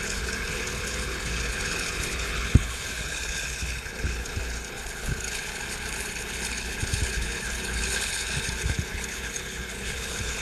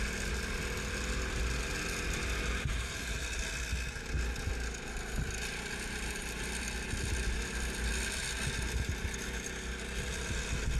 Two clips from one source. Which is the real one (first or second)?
second